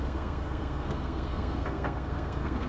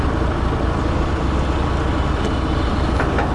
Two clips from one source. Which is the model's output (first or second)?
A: first